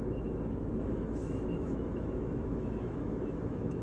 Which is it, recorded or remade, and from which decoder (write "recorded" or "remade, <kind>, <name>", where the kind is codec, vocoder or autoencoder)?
remade, autoencoder, DAC-VAE